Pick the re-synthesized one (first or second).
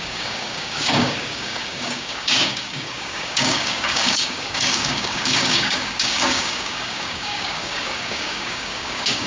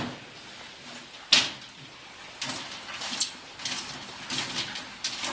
first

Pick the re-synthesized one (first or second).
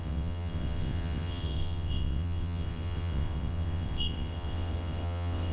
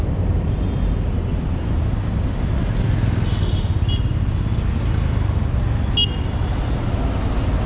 first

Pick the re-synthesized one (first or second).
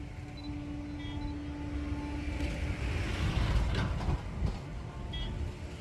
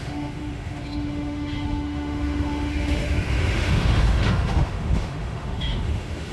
second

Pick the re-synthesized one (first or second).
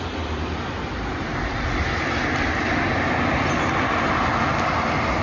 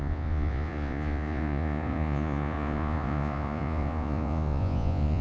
second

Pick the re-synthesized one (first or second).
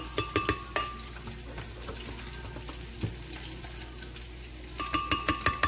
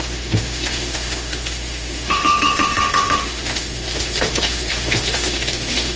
second